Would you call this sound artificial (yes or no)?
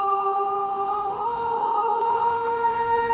yes